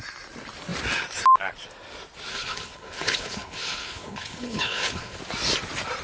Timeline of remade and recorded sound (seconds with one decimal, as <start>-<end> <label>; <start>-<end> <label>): 0.0-2.3 recorded; 2.3-5.2 remade; 5.2-6.0 recorded